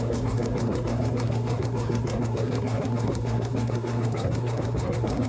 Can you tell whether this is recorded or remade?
remade